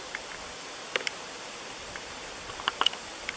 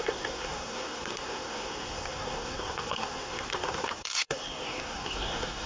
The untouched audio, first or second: first